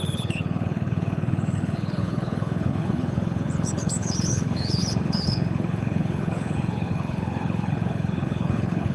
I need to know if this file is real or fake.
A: fake